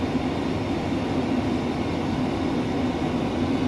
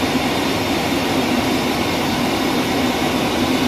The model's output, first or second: second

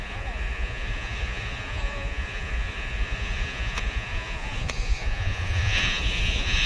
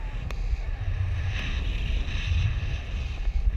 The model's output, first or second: first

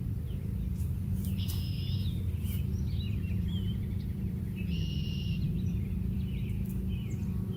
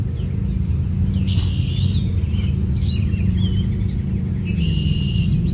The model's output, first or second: first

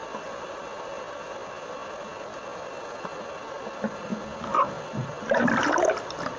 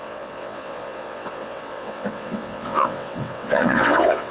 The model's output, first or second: second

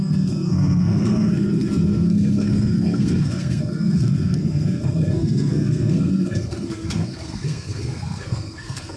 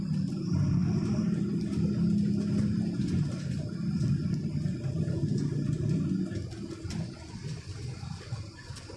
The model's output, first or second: first